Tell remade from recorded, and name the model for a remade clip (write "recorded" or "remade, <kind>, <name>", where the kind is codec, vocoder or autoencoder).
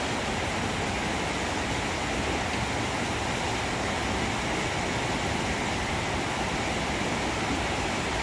recorded